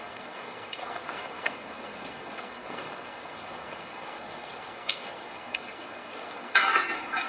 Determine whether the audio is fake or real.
fake